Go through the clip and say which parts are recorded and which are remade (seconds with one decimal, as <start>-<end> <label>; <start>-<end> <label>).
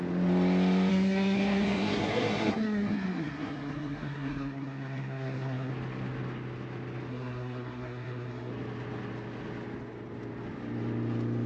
0.0-0.9 recorded; 0.9-5.7 remade; 5.7-7.1 recorded; 7.1-8.5 remade; 8.5-11.5 recorded